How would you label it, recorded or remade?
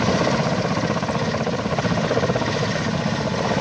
recorded